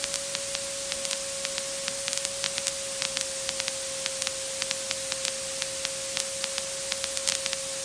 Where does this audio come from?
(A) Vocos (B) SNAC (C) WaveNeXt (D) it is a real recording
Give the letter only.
D